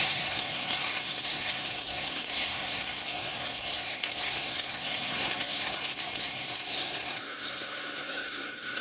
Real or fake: fake